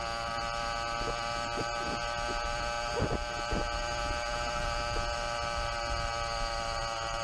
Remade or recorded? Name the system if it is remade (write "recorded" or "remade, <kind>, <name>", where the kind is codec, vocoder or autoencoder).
recorded